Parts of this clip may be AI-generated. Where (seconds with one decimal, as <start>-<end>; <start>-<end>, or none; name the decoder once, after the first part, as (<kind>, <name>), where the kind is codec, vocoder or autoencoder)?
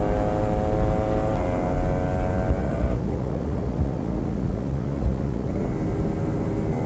2.6-5.6 (vocoder, Vocos)